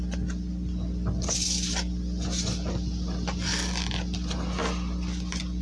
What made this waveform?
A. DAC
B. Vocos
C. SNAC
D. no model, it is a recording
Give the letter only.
D